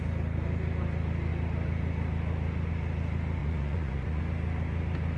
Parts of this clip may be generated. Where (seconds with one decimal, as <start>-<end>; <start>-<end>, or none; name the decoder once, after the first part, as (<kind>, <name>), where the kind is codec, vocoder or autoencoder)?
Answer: 3.4-4.2 (vocoder, Vocos)